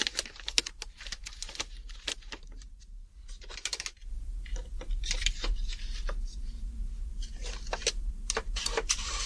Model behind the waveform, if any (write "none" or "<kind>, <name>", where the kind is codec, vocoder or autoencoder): vocoder, BigVGAN v2